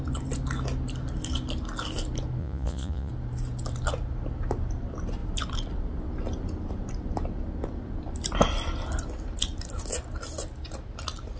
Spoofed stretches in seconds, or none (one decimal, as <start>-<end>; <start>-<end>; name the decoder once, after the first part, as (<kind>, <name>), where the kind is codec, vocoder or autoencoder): 2.4-3.1 (vocoder, Vocos)